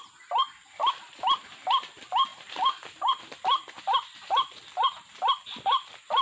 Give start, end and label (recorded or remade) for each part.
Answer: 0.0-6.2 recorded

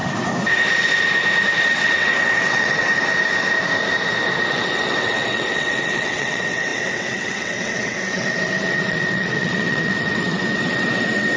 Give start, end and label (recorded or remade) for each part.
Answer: 0.0-1.6 recorded; 1.6-2.9 remade; 2.9-4.5 recorded; 4.5-11.4 remade

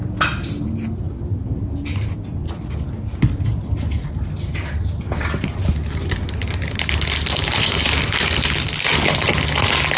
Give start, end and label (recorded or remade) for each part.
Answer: 0.0-10.0 recorded

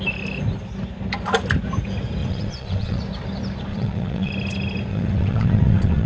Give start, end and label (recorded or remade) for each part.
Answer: 0.0-2.2 recorded; 2.2-3.0 remade; 3.0-3.7 recorded; 3.7-4.3 remade; 4.3-4.9 recorded; 4.9-6.1 remade

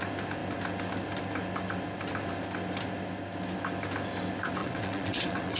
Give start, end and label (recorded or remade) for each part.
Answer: 0.0-4.6 recorded; 4.6-5.6 remade

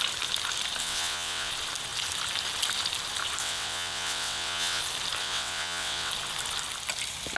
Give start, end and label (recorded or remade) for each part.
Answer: 0.0-0.8 recorded; 0.8-1.5 remade; 1.5-3.4 recorded; 3.4-4.8 remade; 4.8-5.2 recorded; 5.2-6.1 remade; 6.1-7.4 recorded

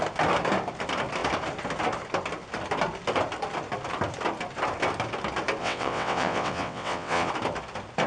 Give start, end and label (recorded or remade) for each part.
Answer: 0.0-5.6 recorded; 5.6-7.3 remade; 7.3-8.1 recorded

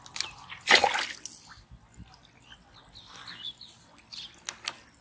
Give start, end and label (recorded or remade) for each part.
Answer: 0.0-5.0 recorded